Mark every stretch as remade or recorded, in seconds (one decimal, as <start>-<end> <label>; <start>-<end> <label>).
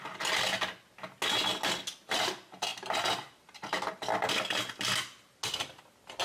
0.0-6.2 recorded